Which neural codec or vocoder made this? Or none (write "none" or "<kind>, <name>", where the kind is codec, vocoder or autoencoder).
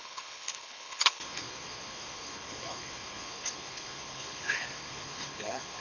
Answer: codec, HILCodec